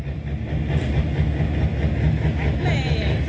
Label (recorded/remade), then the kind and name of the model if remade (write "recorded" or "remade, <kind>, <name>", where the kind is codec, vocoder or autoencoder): recorded